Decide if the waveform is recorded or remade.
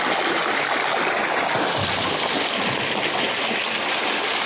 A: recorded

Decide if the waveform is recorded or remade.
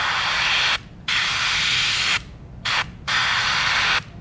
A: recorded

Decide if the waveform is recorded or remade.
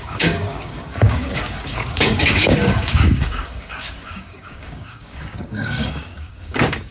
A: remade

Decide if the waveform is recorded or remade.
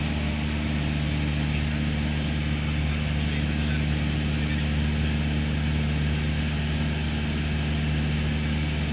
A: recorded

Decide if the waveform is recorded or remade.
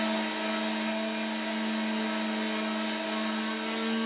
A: recorded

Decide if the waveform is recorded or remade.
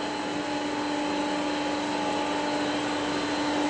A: recorded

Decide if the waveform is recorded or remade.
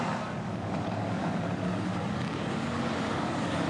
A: remade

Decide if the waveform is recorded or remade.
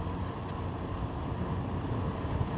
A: recorded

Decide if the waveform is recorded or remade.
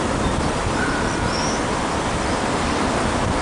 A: recorded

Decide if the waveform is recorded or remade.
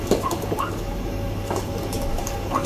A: remade